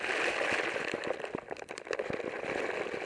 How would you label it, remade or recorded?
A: recorded